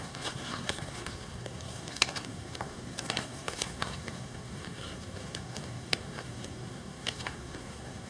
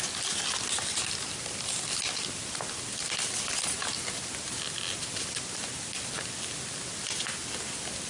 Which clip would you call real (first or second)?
second